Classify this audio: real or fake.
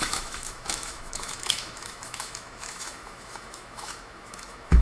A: fake